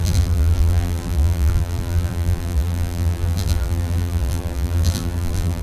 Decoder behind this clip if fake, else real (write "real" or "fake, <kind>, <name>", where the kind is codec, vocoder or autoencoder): fake, vocoder, BigVGAN v2